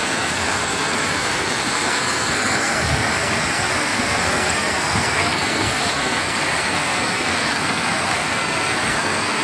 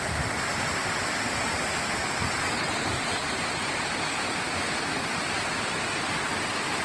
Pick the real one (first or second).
second